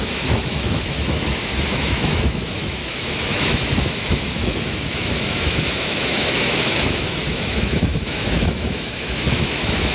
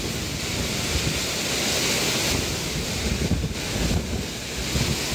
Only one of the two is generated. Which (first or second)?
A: first